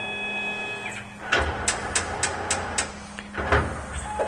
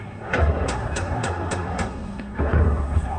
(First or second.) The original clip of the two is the first